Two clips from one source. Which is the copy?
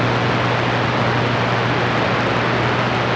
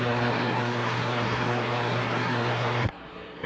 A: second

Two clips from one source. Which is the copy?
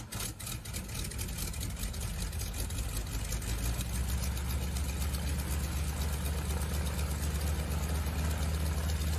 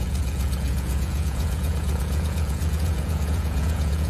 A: second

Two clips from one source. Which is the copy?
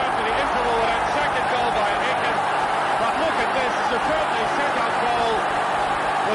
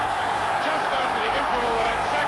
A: second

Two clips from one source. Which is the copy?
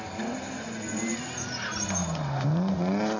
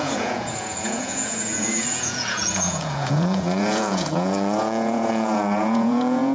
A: second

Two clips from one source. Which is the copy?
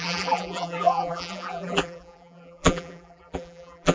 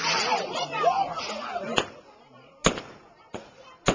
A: first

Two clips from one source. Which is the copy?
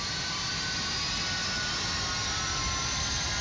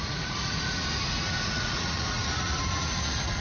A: second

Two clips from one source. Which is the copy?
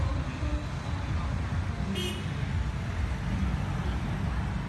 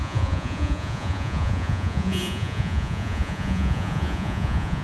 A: second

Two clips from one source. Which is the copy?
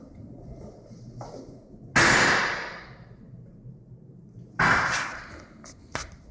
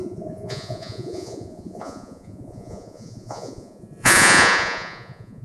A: second